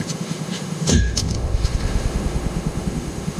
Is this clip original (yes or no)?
no